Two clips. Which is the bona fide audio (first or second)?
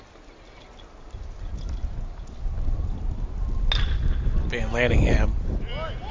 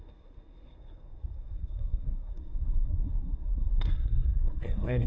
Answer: first